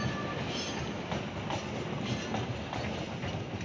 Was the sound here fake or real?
real